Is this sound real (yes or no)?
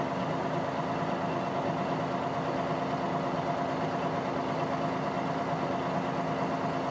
yes